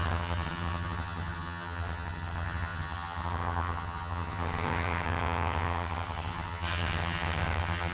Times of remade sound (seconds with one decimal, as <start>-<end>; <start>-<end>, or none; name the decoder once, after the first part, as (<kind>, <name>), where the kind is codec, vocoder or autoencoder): 0.0-7.9 (vocoder, HiFi-GAN)